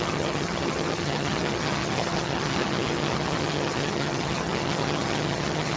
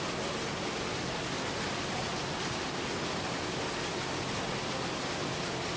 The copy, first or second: first